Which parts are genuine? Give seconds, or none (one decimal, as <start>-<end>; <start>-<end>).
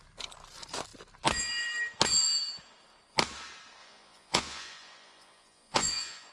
0.0-3.8